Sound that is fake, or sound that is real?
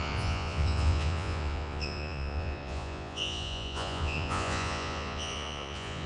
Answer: fake